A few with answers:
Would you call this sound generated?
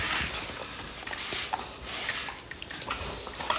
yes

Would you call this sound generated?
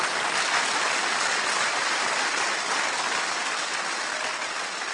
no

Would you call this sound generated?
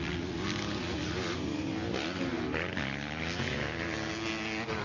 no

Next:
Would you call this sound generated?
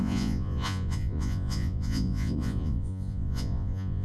yes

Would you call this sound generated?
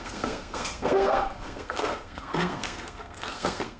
yes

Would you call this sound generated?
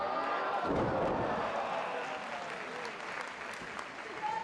no